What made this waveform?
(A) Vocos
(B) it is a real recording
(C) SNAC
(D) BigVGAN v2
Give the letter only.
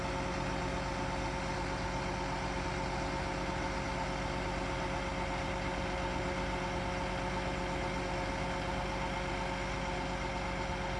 B